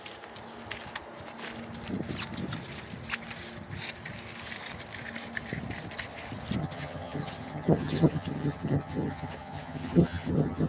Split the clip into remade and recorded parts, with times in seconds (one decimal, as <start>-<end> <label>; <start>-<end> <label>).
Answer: 0.0-6.6 recorded; 6.6-10.7 remade